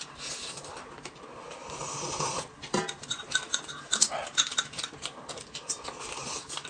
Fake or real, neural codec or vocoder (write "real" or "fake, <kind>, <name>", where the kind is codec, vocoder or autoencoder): real